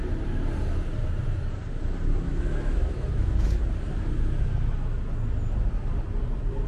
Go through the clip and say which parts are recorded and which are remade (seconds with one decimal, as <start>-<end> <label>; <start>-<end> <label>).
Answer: 0.0-2.3 recorded; 2.3-3.6 remade; 3.6-6.7 recorded